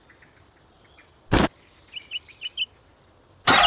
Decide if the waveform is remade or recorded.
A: recorded